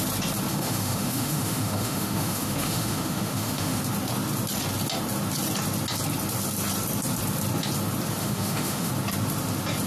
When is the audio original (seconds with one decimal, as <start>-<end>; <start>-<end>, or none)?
0.0-0.5; 3.8-8.2; 8.9-9.9